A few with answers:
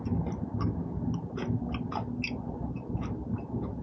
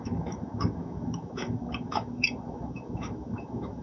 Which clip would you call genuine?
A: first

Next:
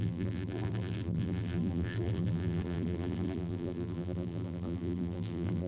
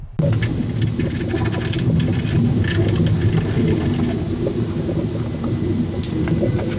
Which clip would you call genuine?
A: second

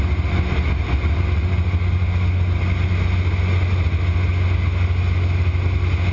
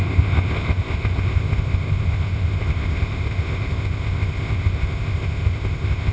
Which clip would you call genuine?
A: first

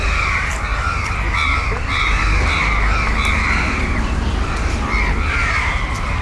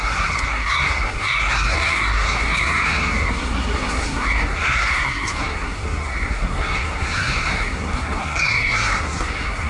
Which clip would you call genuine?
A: first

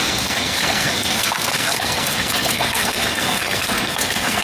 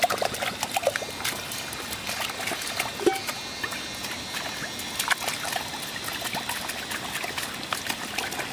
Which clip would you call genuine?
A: second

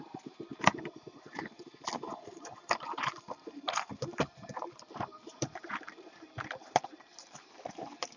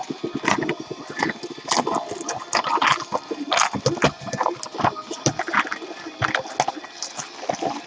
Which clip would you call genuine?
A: second